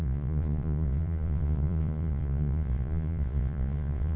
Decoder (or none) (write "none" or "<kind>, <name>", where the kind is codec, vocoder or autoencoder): vocoder, Vocos